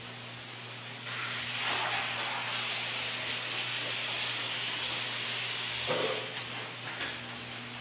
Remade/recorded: recorded